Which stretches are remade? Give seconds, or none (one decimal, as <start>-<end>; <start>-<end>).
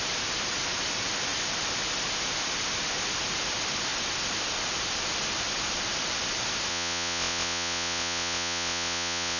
6.7-9.4